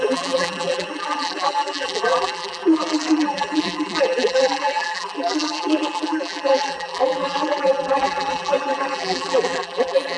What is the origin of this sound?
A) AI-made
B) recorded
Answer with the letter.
A